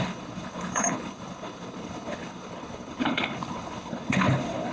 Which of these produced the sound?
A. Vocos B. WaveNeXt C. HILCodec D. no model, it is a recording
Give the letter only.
C